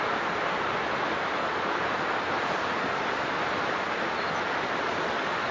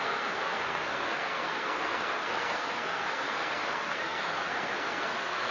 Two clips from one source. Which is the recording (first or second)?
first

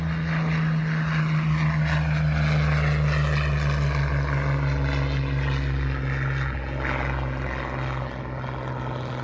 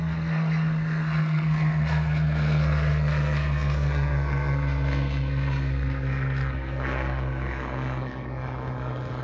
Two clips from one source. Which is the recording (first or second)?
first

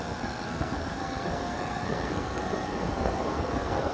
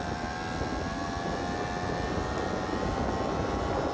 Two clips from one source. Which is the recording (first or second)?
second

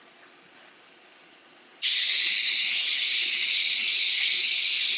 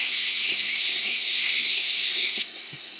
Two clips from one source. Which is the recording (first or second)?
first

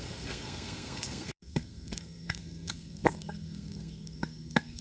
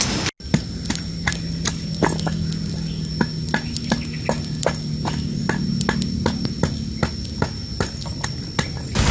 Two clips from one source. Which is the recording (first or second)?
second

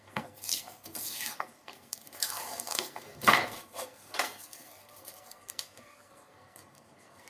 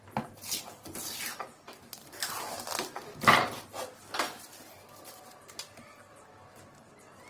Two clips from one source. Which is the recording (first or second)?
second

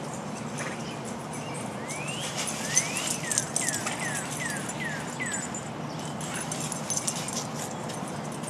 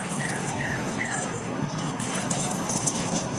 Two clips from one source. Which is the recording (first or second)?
first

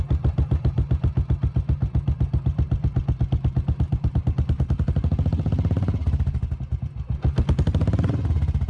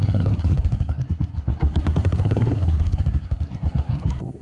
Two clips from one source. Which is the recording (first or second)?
first